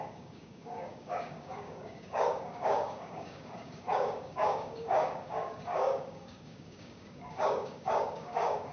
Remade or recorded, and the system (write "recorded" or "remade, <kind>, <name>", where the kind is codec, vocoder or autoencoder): remade, codec, DAC